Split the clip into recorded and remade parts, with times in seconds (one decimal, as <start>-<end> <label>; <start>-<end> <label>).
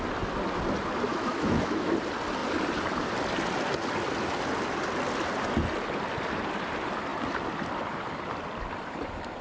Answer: 0.0-1.1 recorded; 1.1-1.9 remade; 1.9-9.4 recorded